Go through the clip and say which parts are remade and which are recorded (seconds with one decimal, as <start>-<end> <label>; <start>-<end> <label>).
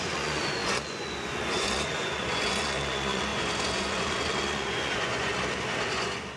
0.0-5.3 remade; 5.3-5.9 recorded; 5.9-6.4 remade